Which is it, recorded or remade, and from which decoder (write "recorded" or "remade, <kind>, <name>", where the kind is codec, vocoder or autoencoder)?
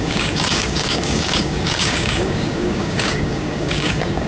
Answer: remade, codec, DAC